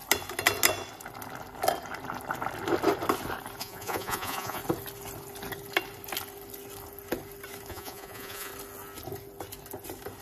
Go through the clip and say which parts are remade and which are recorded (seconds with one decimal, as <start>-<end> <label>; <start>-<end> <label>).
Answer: 0.0-3.6 recorded; 3.6-4.6 remade; 4.6-7.7 recorded; 7.7-8.5 remade; 8.5-10.2 recorded